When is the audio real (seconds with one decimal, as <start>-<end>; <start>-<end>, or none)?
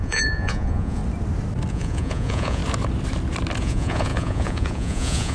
1.0-1.7; 2.6-3.6